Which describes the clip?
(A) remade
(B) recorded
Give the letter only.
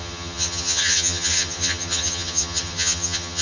A